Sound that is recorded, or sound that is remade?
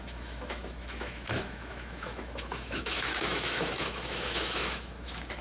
remade